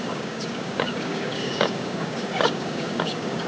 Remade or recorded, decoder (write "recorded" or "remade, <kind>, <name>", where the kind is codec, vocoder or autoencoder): remade, codec, DAC